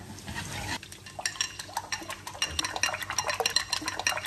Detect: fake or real real